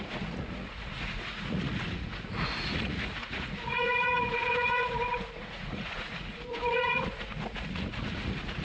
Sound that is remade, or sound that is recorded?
remade